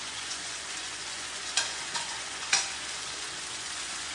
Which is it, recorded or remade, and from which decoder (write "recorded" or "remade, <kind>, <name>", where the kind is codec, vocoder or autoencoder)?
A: remade, vocoder, Vocos